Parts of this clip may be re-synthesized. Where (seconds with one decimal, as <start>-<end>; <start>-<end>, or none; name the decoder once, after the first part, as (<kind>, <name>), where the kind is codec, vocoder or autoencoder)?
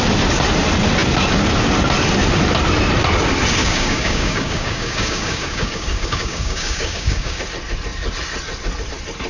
3.6-7.4 (codec, DAC)